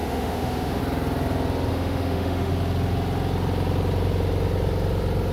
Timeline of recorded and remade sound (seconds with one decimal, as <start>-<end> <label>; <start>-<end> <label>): 0.0-0.8 remade; 0.8-1.7 recorded; 1.7-2.5 remade; 2.5-5.3 recorded